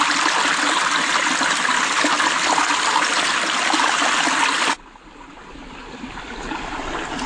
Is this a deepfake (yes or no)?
no